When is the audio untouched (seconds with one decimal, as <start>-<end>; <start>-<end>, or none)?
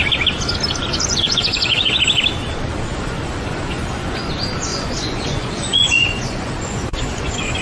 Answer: 0.0-0.8; 2.0-2.9; 4.3-4.7